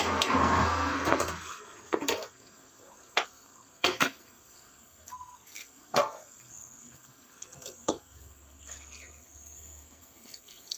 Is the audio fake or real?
fake